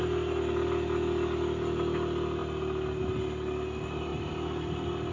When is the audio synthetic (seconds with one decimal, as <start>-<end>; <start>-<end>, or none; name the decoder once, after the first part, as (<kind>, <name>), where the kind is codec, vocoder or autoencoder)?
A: none